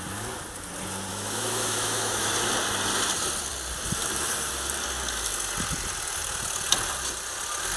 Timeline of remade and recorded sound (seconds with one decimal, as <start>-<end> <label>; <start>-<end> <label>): 0.0-1.1 recorded; 1.1-2.3 remade; 2.3-7.8 recorded